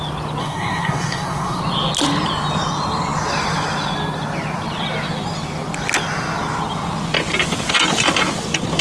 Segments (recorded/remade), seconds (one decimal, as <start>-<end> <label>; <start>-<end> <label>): 0.0-0.4 recorded; 0.4-1.6 remade; 1.6-8.8 recorded